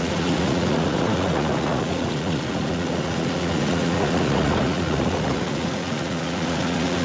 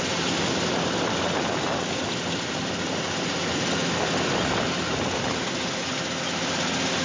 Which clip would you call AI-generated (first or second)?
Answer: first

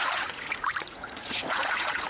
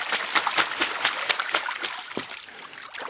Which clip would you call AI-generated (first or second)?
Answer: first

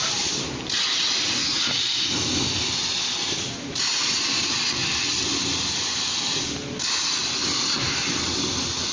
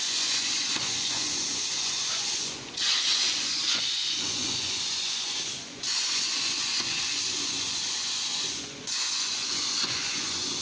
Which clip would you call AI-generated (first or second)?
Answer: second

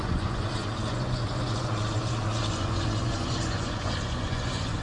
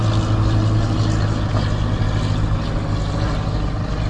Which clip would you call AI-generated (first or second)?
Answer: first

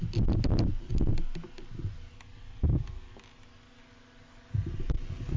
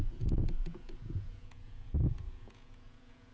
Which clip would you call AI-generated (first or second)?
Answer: second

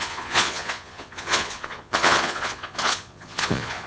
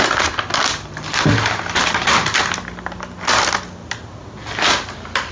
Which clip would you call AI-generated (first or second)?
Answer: first